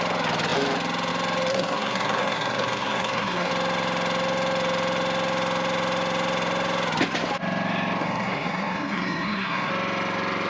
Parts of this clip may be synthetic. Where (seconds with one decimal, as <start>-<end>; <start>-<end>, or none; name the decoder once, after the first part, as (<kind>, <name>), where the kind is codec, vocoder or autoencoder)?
1.5-3.5 (codec, SNAC); 8.0-9.7